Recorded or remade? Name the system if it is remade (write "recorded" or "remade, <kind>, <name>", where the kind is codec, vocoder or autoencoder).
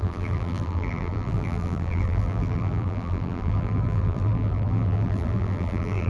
remade, vocoder, BigVGAN v2